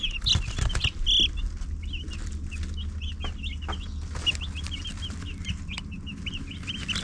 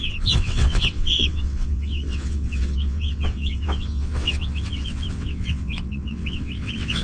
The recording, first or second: first